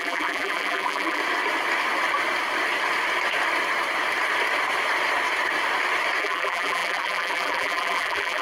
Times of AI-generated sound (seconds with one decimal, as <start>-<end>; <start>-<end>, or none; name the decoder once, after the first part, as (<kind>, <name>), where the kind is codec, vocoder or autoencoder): 0.0-1.2 (vocoder, BigVGAN v2); 6.2-8.4